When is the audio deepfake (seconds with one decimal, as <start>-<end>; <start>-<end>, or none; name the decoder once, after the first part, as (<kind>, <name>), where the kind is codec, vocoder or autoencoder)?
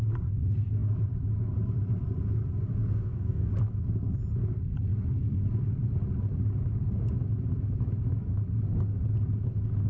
2.9-3.5 (codec, DAC)